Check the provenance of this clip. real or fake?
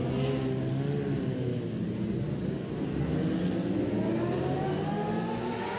real